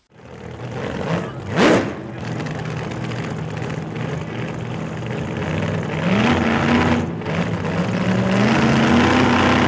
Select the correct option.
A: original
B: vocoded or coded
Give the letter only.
A